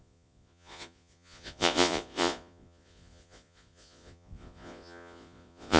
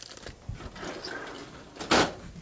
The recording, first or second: second